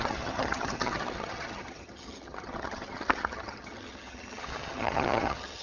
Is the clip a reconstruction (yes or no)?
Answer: yes